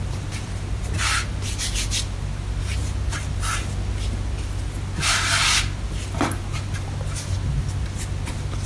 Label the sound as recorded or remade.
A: recorded